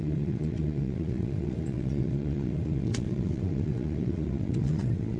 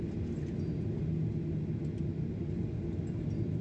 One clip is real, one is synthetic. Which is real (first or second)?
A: second